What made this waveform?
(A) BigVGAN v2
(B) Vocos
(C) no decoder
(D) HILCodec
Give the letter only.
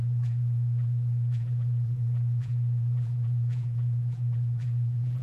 A